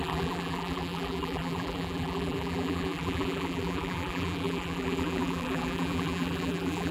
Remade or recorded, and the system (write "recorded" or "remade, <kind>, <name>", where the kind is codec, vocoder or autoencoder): remade, vocoder, BigVGAN v2